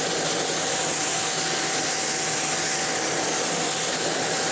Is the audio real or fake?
real